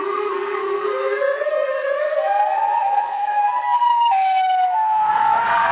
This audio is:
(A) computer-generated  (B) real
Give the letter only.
A